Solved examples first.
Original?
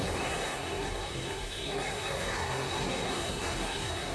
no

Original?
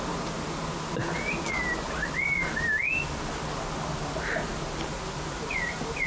yes